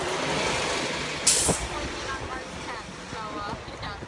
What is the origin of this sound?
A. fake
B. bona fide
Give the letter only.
B